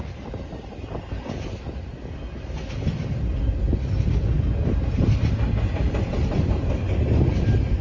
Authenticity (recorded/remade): recorded